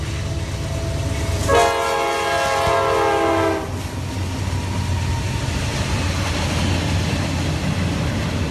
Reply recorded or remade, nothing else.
recorded